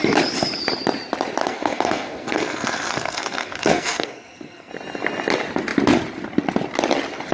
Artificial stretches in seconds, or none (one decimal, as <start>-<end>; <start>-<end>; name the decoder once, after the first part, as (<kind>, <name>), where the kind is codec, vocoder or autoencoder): 1.4-4.7 (codec, SNAC)